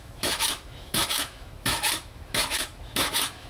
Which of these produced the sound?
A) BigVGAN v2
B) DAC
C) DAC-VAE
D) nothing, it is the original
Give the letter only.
C